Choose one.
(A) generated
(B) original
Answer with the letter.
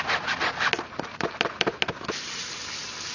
B